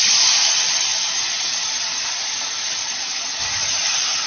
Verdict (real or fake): real